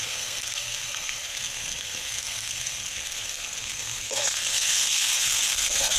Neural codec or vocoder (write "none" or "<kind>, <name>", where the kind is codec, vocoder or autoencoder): codec, SNAC